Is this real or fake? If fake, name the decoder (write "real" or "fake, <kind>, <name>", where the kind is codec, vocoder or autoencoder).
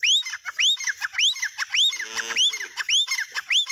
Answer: real